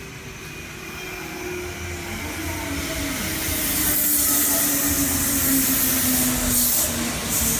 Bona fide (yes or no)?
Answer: yes